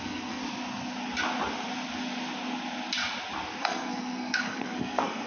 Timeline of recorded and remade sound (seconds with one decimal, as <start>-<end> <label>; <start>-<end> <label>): 0.0-0.4 remade; 0.4-3.6 recorded; 3.6-5.3 remade